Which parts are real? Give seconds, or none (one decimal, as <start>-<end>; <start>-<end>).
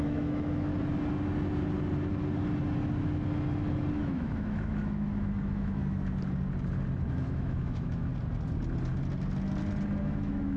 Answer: 0.7-3.9; 5.8-7.1; 8.1-10.0